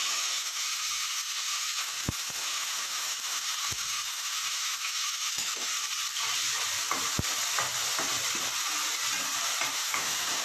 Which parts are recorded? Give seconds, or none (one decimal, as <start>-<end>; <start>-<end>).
5.7-9.7